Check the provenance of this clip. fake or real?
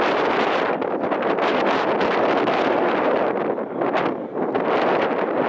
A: real